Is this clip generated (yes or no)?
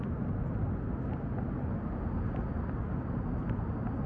no